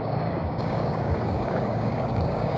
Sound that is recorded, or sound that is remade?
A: remade